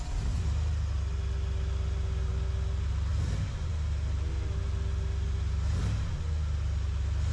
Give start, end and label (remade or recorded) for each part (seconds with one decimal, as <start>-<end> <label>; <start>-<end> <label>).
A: 0.0-7.3 recorded